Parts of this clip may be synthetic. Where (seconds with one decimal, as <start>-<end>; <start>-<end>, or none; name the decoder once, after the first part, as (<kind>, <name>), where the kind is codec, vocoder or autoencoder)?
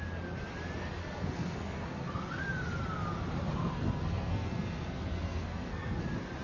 1.0-2.4 (codec, SNAC); 3.6-6.0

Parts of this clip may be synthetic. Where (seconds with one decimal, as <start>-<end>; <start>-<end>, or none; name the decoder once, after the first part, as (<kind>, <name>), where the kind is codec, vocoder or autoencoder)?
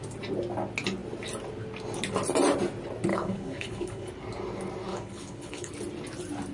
3.1-4.1 (codec, HILCodec); 4.9-5.7